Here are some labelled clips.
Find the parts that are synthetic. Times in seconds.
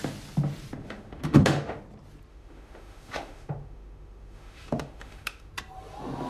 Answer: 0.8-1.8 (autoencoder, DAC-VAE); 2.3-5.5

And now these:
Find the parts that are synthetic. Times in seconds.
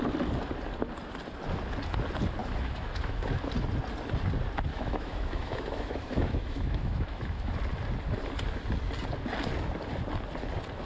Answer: 2.4-3.4 (autoencoder, DAC-VAE); 4.7-7.5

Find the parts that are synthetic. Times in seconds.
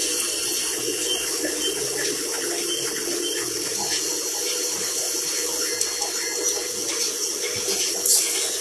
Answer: none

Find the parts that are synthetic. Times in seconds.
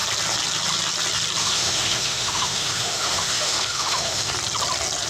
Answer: 1.4-4.3 (autoencoder, DAC-VAE)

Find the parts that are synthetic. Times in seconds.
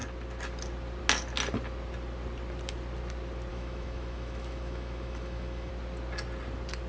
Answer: 3.5-5.7 (autoencoder, DAC-VAE)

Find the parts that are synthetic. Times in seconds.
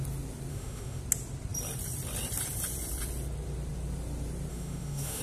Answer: 0.5-1.0 (autoencoder, DAC-VAE); 4.5-5.2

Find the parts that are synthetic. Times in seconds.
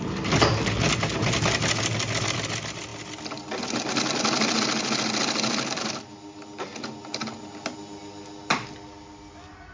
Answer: none